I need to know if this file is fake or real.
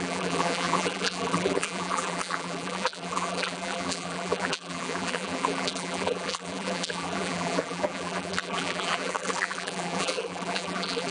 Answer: fake